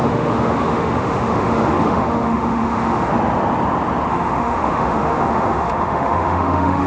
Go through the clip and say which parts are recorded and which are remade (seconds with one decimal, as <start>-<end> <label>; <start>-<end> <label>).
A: 0.0-3.1 remade; 3.1-4.1 recorded; 4.1-6.9 remade